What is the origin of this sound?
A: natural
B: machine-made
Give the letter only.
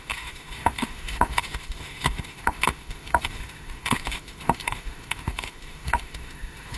B